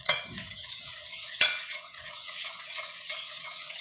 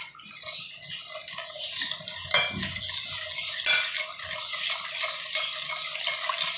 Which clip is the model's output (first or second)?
first